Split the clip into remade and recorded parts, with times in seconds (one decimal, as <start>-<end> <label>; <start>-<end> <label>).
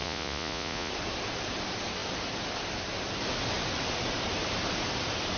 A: 0.0-0.9 remade; 0.9-5.4 recorded